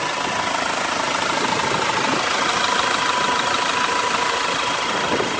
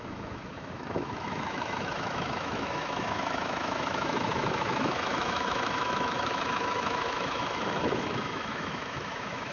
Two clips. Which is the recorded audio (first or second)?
first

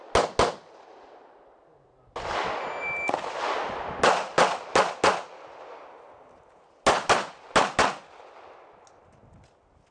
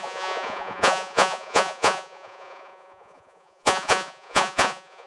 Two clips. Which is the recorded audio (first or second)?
first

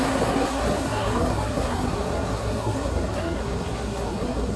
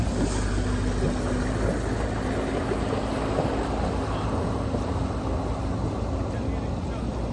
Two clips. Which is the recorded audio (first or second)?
second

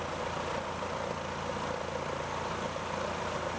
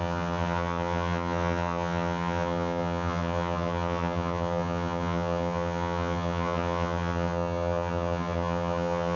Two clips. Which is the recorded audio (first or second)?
first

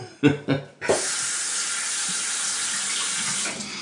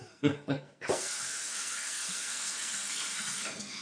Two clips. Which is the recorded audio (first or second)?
first